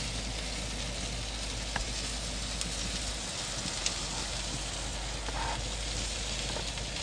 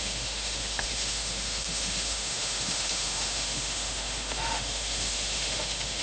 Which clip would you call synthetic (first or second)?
second